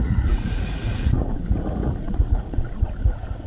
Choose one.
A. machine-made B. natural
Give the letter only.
A